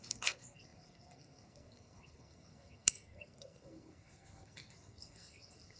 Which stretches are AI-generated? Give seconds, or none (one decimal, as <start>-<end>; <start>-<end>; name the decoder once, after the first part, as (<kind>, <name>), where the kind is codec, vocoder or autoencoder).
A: 0.0-5.8 (codec, SNAC)